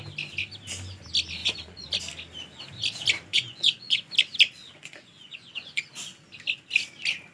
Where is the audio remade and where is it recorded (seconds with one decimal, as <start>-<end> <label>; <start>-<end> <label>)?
0.0-1.4 recorded; 1.4-2.0 remade; 2.0-3.3 recorded; 3.3-4.1 remade; 4.1-4.6 recorded; 4.6-5.9 remade; 5.9-7.3 recorded